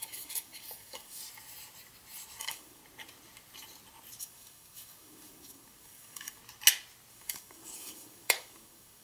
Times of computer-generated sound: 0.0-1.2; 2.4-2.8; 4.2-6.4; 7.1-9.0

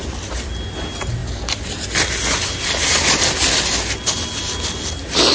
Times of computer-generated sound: none

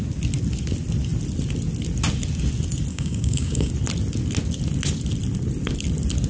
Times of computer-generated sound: 2.9-3.7

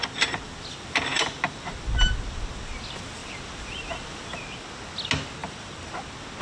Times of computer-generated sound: 5.4-6.0